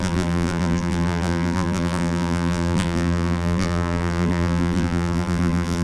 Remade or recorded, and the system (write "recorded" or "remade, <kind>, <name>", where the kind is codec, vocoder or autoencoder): remade, vocoder, BigVGAN v2